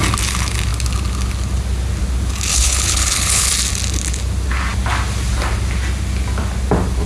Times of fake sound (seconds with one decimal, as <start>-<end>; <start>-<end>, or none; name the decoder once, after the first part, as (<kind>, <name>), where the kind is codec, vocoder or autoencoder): 2.5-3.5 (codec, HILCodec)